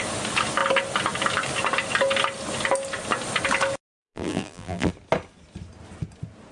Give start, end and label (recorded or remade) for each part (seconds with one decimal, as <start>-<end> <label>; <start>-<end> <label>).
0.0-4.0 recorded; 4.0-4.9 remade; 4.9-6.5 recorded